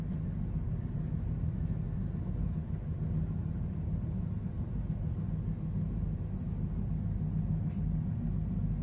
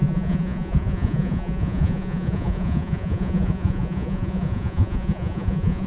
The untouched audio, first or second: first